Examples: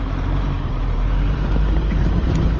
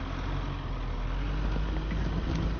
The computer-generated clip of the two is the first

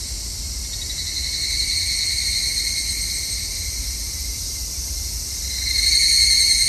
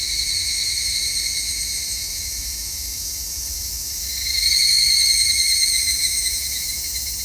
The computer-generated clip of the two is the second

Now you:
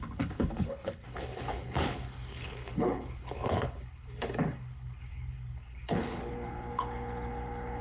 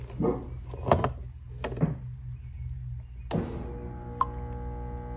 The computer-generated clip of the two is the first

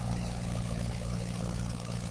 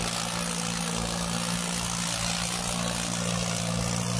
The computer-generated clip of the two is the first